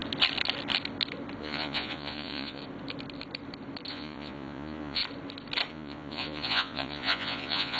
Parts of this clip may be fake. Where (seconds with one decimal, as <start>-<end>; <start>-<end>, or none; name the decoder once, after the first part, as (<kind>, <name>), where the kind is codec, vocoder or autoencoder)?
1.4-2.6 (vocoder, Vocos); 3.9-5.0; 5.7-7.8